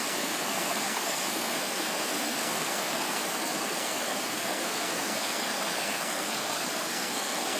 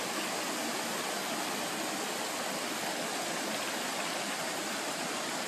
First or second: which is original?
second